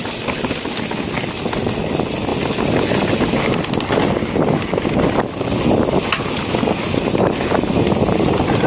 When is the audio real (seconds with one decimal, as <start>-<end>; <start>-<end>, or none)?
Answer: 0.0-8.7